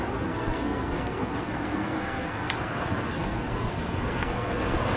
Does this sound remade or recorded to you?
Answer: remade